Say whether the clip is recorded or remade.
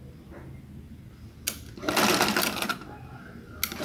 recorded